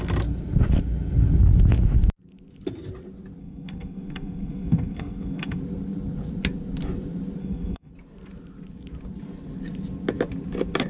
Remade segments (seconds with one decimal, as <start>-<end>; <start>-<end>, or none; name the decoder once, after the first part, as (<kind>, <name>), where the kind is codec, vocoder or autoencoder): 3.4-5.6 (codec, SNAC); 7.4-7.9